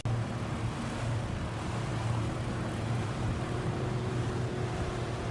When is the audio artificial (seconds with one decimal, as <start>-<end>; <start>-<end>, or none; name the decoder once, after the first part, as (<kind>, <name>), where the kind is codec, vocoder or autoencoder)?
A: 1.9-5.3 (vocoder, BigVGAN v2)